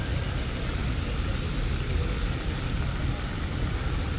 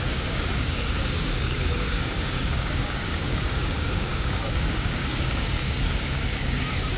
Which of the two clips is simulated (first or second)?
second